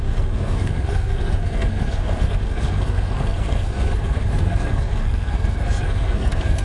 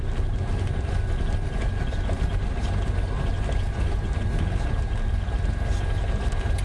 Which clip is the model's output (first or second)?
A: first